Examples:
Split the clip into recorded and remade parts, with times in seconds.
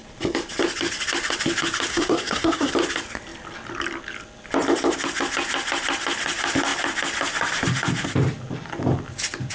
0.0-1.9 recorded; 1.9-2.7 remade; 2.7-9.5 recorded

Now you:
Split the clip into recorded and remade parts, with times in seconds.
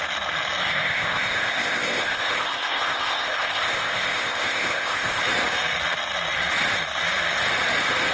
0.0-0.6 recorded; 0.6-5.2 remade; 5.2-8.1 recorded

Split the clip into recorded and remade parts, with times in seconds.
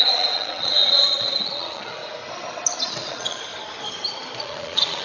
0.0-2.0 remade; 2.0-2.8 recorded; 2.8-3.5 remade; 3.5-4.4 recorded; 4.4-5.0 remade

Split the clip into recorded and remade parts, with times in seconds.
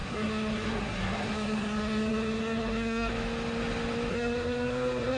0.0-3.1 remade; 3.1-4.1 recorded; 4.1-5.2 remade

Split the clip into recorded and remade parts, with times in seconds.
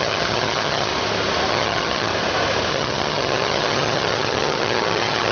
0.0-0.9 remade; 0.9-1.5 recorded; 1.5-2.1 remade; 2.1-2.7 recorded; 2.7-5.3 remade